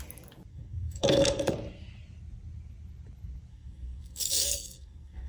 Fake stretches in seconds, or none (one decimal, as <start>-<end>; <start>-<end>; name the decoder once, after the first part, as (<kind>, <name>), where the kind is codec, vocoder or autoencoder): 0.5-1.5 (codec, SNAC); 3.5-5.3